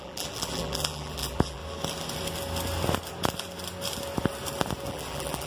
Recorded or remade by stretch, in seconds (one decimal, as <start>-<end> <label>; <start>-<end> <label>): 0.0-1.6 remade; 1.6-4.9 recorded; 4.9-5.5 remade